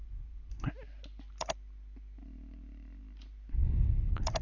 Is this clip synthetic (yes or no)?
no